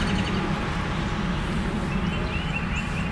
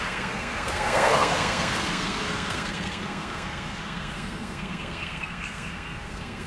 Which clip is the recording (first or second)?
first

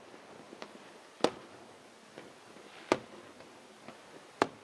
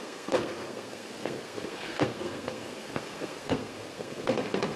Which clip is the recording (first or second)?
first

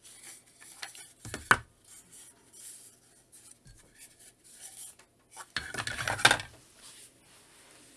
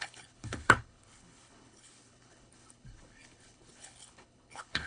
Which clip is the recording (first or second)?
first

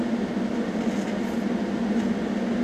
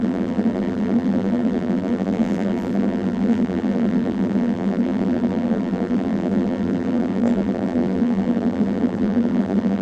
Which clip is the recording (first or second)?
first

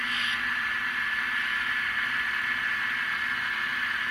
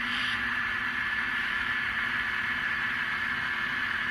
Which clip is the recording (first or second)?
first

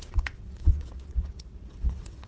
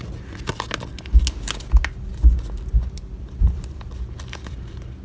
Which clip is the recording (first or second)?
second